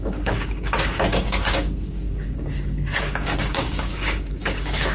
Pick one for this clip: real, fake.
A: fake